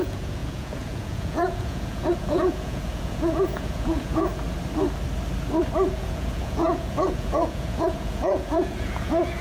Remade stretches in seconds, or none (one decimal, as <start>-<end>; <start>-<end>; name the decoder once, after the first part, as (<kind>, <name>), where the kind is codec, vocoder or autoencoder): 0.0-4.3 (vocoder, Vocos); 5.9-9.4